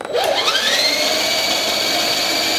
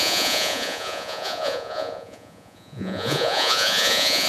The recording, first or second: first